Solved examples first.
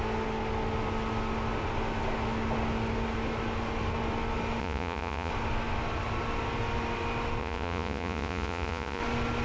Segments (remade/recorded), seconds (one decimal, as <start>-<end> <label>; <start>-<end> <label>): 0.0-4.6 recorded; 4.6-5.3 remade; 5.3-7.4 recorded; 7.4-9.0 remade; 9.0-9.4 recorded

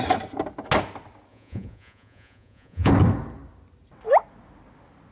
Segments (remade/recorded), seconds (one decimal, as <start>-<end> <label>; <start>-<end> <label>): 0.0-1.3 recorded; 1.3-2.9 remade; 2.9-5.1 recorded

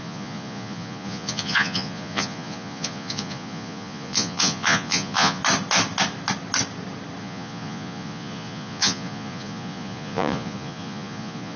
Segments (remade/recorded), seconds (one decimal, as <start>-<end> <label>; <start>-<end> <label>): 0.0-5.4 remade; 5.4-7.2 recorded; 7.2-11.6 remade